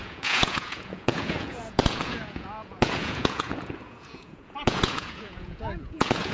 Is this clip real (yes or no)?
no